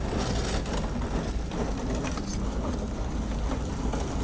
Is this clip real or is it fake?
real